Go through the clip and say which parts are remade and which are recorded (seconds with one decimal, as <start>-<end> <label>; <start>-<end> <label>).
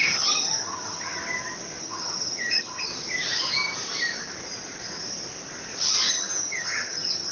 0.0-1.2 remade; 1.2-1.8 recorded; 1.8-2.9 remade; 2.9-6.1 recorded; 6.1-7.3 remade